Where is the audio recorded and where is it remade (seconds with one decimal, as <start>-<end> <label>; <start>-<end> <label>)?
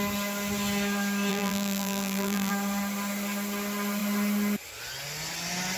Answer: 0.0-1.3 recorded; 1.3-2.5 remade; 2.5-5.8 recorded